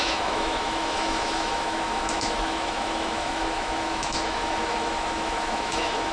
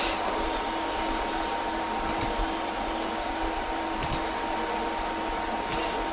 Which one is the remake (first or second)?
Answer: first